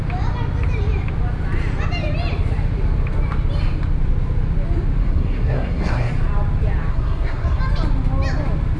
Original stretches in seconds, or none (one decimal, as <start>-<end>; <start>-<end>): 0.0-5.0; 6.1-6.9; 7.6-8.8